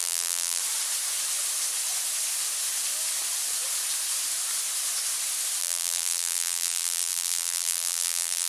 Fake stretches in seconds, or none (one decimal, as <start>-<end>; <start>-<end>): 0.0-0.6; 5.6-8.5